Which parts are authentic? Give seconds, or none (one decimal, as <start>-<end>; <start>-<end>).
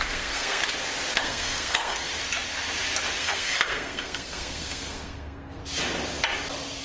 0.6-1.1; 2.1-3.2; 5.6-6.8